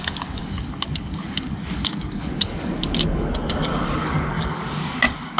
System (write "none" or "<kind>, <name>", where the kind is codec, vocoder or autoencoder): codec, DAC